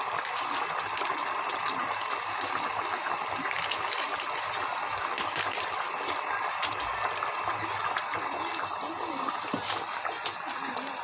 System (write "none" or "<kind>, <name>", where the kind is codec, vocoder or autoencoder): none